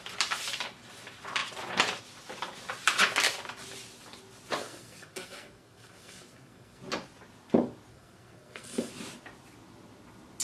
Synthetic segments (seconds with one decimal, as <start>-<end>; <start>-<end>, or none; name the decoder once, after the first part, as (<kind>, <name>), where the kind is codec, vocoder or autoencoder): 4.6-6.8 (codec, SNAC); 7.9-8.9